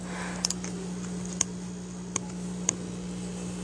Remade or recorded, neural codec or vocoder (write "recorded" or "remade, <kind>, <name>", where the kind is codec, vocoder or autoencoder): recorded